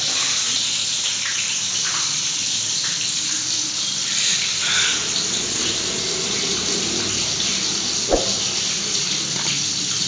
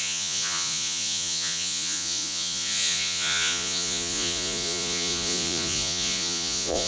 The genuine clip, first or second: first